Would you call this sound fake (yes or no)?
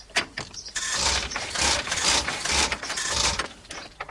yes